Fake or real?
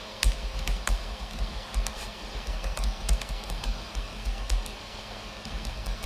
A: fake